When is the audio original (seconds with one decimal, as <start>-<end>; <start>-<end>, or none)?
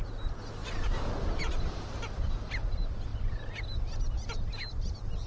0.0-0.6; 2.0-5.3